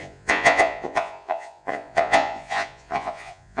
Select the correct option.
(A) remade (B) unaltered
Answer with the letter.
A